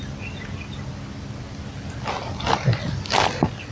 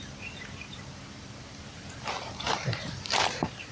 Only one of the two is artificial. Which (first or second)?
second